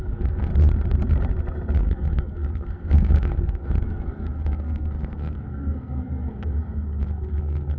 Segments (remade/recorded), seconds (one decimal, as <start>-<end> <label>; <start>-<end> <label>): 0.0-0.5 remade; 0.5-1.8 recorded; 1.8-7.8 remade